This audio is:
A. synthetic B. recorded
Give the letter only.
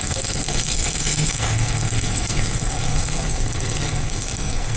A